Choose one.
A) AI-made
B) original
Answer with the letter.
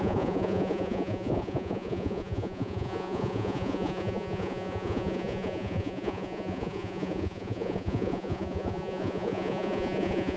A